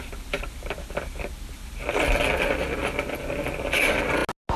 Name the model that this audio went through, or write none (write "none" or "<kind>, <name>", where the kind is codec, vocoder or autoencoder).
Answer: none